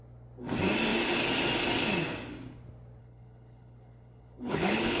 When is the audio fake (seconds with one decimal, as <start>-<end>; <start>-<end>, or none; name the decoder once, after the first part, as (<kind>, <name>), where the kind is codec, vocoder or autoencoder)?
3.0-5.0 (codec, HILCodec)